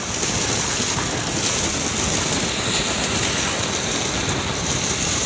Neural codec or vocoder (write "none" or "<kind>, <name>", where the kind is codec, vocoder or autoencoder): none